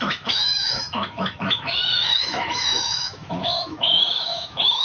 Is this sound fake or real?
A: fake